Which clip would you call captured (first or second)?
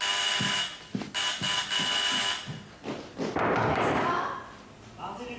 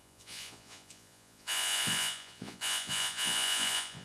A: first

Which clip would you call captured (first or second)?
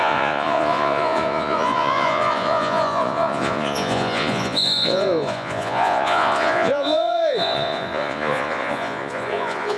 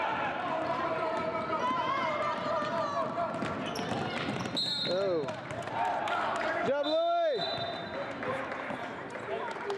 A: second